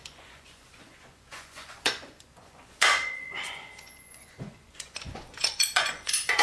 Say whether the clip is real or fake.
fake